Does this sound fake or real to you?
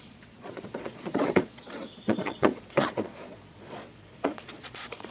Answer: fake